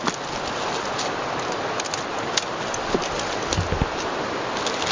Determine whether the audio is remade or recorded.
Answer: recorded